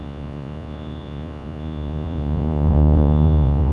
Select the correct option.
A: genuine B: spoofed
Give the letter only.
B